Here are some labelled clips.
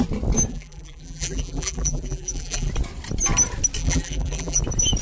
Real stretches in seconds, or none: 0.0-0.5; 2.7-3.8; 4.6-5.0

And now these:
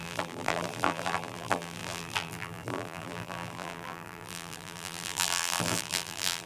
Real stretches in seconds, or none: none

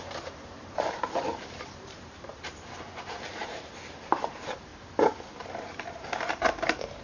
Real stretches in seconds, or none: 4.7-5.7

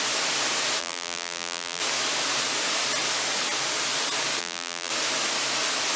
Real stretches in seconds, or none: 0.0-0.8; 1.8-4.4; 4.9-6.0

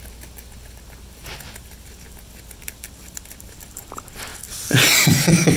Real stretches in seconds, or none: 0.0-5.6